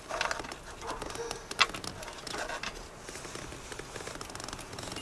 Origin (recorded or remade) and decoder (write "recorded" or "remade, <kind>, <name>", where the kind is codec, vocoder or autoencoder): recorded